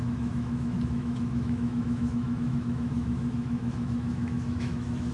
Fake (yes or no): yes